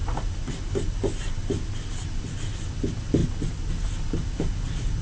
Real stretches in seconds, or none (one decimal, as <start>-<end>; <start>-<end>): 0.0-5.0